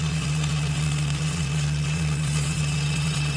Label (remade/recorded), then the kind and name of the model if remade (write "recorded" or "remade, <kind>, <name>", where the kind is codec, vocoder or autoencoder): remade, vocoder, WaveNeXt